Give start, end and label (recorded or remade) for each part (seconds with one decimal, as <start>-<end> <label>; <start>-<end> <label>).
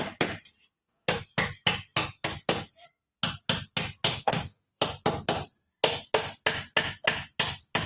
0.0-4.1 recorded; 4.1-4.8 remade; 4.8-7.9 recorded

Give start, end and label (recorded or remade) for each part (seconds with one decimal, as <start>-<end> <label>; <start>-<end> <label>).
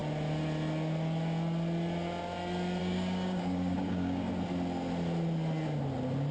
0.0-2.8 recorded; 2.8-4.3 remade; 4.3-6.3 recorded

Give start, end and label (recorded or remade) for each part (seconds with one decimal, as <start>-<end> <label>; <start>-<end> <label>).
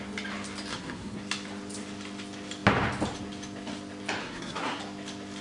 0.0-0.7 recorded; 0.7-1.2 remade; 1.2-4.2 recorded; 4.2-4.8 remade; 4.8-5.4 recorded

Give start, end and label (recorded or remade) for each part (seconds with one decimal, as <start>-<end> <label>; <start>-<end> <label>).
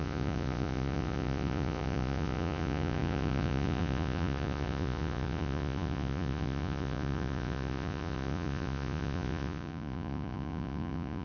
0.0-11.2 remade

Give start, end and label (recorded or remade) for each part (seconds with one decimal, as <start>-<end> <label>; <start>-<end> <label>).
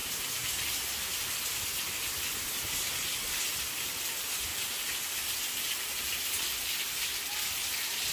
0.0-8.1 recorded